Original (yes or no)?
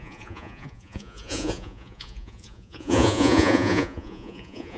no